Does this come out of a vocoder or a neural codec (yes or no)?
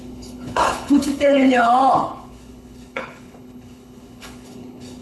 yes